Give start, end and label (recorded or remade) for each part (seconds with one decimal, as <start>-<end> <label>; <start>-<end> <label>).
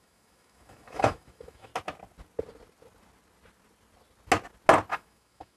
0.0-1.7 remade; 1.7-4.9 recorded; 4.9-5.6 remade